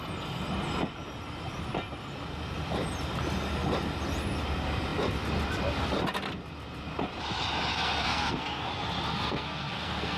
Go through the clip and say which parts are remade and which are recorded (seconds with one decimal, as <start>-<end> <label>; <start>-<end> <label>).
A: 0.0-7.7 recorded; 7.7-8.7 remade; 8.7-9.1 recorded; 9.1-10.2 remade